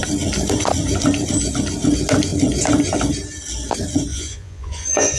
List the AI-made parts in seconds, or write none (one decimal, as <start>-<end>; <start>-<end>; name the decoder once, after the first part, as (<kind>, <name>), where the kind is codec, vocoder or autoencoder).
4.1-5.2 (vocoder, Vocos)